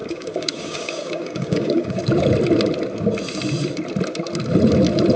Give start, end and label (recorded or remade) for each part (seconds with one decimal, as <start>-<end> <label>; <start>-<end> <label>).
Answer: 0.0-2.0 remade; 2.0-5.2 recorded